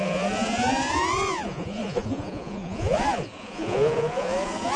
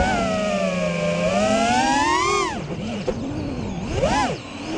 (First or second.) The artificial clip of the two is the first